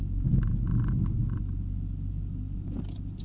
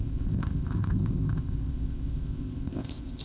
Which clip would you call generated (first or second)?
second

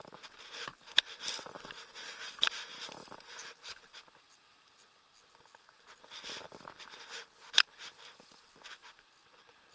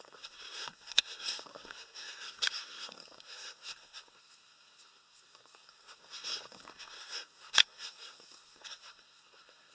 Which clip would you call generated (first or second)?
second